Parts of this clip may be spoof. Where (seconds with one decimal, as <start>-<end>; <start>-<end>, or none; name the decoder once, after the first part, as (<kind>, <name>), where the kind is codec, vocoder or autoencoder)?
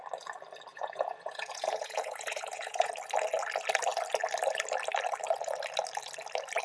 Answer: 0.7-2.9 (vocoder, Vocos)